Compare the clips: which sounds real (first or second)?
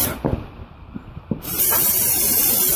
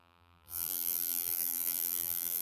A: first